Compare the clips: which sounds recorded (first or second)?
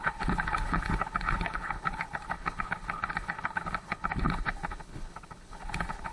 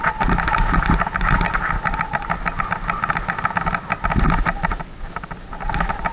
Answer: second